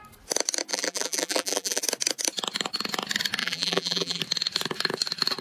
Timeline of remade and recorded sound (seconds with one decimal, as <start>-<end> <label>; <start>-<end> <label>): 0.0-0.7 recorded; 0.7-1.8 remade; 1.8-3.4 recorded; 3.4-4.2 remade; 4.2-5.4 recorded